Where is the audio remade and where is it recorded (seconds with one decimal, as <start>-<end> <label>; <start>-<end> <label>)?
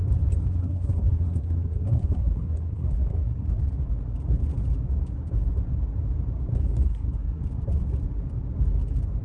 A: 0.0-0.6 recorded; 0.6-3.6 remade; 3.6-6.5 recorded; 6.5-7.4 remade; 7.4-9.2 recorded